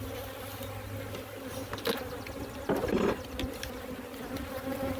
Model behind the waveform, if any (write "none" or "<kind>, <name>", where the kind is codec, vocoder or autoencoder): none